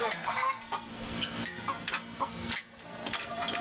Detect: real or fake fake